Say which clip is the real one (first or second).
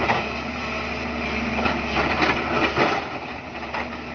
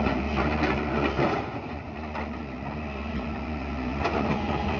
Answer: first